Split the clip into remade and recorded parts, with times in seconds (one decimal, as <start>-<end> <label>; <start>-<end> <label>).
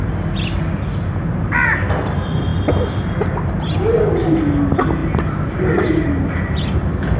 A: 0.0-7.2 recorded